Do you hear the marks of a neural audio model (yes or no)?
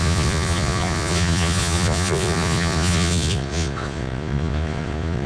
yes